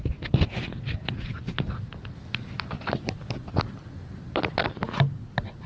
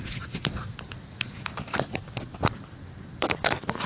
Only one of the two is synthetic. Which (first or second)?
second